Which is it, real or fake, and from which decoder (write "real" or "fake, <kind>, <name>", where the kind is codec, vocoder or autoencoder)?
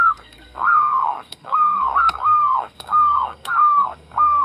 fake, codec, SNAC